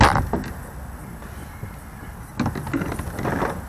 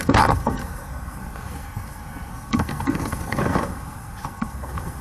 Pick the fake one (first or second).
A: second